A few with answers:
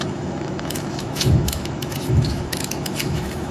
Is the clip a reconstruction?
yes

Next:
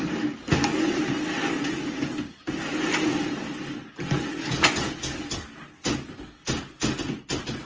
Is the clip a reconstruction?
no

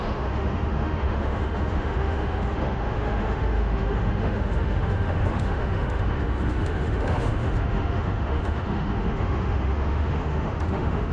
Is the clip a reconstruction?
yes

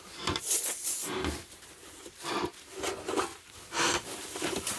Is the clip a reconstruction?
no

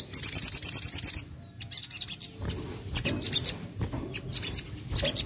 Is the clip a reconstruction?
no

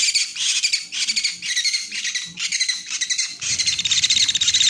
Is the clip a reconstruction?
no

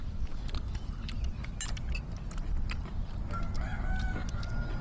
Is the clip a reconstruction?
no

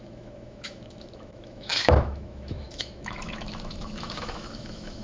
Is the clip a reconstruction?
yes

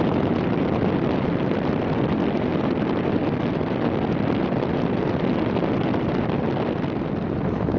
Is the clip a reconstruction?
no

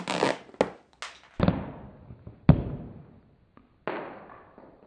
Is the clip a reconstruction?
no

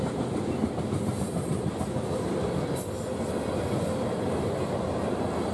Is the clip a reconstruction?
no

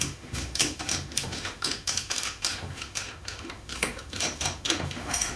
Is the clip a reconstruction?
yes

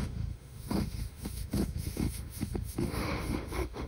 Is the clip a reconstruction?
yes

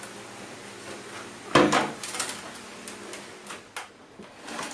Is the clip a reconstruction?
no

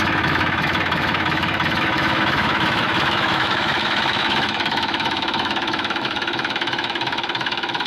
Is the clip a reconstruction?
yes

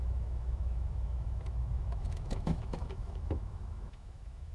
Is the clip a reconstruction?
yes